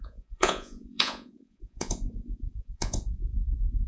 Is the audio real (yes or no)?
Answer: no